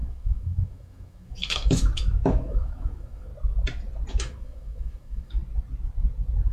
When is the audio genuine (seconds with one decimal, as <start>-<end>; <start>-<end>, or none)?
3.3-4.1; 5.4-6.5